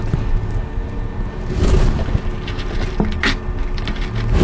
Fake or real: real